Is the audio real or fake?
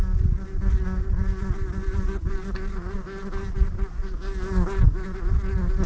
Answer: real